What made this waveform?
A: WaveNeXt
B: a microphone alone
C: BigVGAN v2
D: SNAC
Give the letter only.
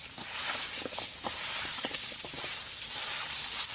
C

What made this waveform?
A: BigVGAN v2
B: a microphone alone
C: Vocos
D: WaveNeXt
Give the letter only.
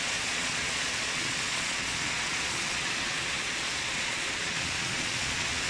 C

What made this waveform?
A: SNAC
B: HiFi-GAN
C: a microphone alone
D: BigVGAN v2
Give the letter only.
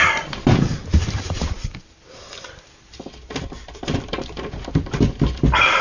D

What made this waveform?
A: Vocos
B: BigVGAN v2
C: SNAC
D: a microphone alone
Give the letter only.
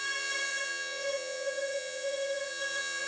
A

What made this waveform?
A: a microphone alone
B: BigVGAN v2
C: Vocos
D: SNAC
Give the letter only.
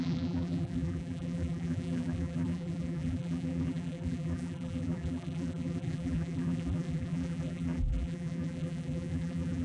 B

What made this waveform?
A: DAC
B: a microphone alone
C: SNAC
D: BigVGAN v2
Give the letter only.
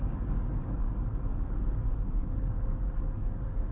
A